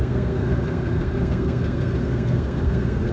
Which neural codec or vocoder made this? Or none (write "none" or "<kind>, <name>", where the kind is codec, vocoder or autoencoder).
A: codec, SNAC